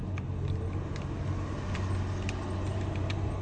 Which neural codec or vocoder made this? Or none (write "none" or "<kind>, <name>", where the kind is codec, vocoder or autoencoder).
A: none